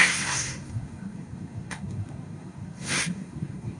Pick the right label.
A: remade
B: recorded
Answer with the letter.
A